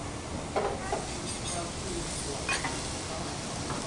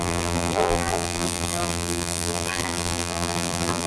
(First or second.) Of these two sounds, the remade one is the second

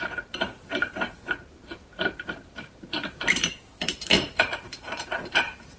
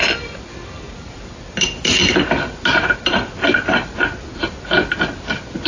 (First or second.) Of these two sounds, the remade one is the first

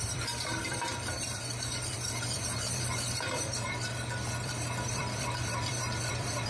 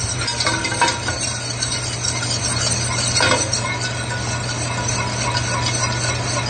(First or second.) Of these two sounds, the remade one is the first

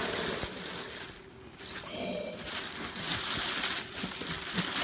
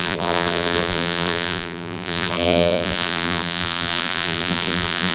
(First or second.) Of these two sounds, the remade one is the second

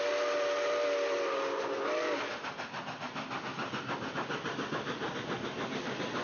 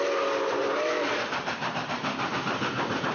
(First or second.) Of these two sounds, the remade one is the second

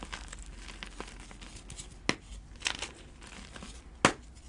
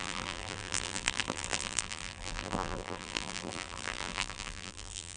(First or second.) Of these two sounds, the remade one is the second